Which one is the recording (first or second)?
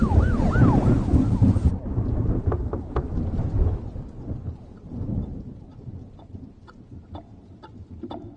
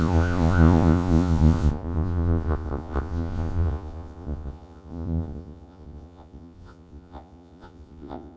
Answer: first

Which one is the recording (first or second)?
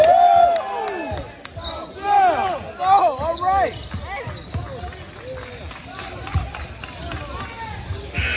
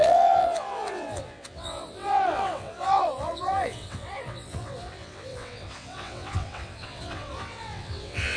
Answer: first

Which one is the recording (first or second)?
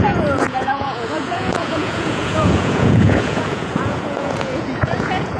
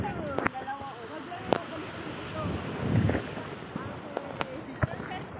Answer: second